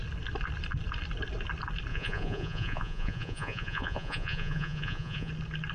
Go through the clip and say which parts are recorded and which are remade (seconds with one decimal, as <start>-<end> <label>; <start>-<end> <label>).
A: 0.0-1.9 recorded; 1.9-5.3 remade; 5.3-5.7 recorded